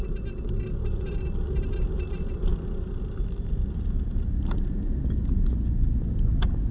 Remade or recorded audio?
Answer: recorded